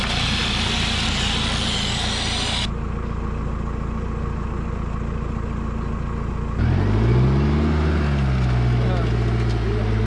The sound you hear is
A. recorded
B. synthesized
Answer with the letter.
A